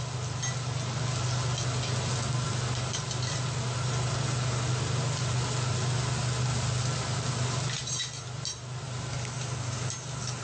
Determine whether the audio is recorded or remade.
recorded